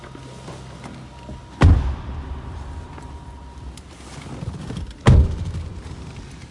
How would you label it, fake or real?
real